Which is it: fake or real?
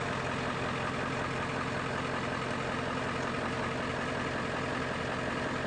real